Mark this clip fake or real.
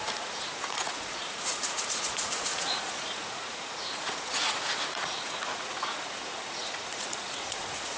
fake